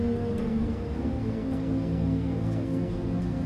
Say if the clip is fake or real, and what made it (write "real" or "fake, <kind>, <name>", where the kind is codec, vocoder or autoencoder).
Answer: fake, codec, SNAC